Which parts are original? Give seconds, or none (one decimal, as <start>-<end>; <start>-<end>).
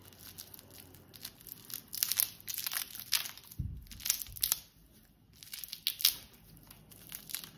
0.0-7.6